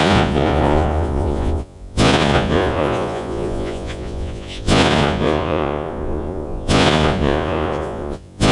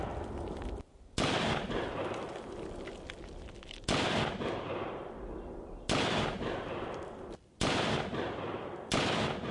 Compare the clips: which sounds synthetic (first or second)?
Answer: first